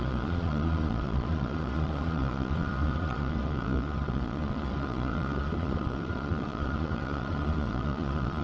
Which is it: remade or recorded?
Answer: remade